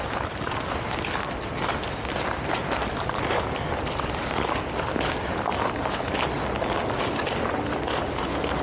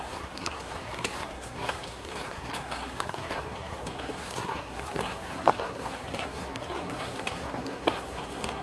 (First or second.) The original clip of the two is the first